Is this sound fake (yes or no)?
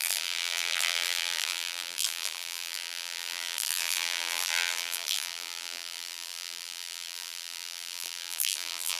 yes